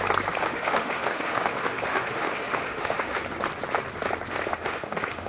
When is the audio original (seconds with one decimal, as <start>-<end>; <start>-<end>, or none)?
0.0-0.4; 3.2-4.3